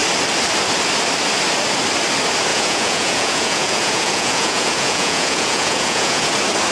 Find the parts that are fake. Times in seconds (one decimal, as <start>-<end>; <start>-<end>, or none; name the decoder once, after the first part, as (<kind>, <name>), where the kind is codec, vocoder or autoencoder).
2.5-6.3 (vocoder, Vocos)